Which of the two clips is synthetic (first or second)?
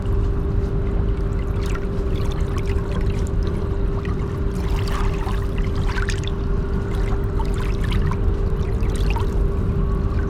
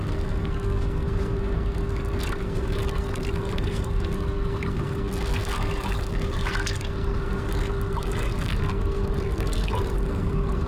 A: second